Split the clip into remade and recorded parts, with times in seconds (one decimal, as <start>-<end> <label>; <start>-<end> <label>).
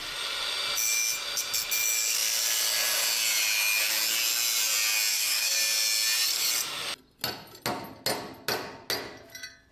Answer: 0.0-5.1 recorded; 5.1-5.6 remade; 5.6-9.7 recorded